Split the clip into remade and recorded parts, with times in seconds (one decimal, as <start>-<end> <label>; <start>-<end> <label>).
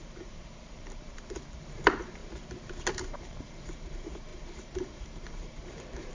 0.0-2.2 remade; 2.2-2.9 recorded; 2.9-6.1 remade